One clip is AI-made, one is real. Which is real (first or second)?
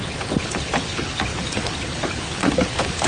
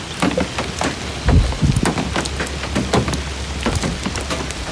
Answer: second